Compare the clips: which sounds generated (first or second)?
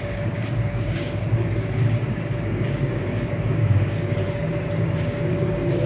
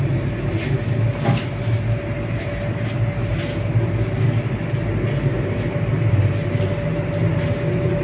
first